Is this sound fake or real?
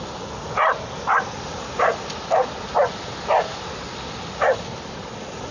real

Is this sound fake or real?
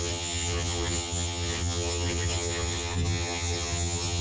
fake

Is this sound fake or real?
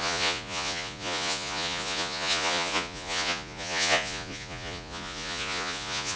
fake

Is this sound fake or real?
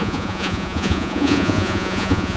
fake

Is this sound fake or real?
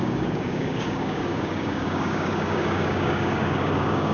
fake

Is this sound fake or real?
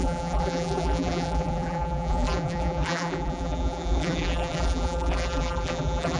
fake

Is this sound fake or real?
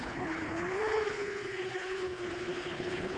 fake